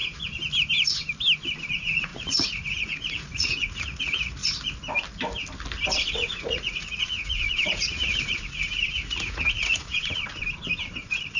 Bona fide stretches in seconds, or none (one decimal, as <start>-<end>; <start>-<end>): 0.0-1.7; 4.4-6.1; 10.3-10.9